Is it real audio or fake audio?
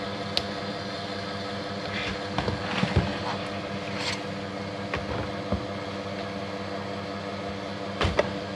real